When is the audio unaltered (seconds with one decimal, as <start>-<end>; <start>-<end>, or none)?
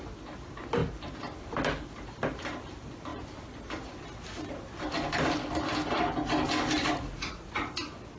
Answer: 0.0-6.8; 7.7-8.2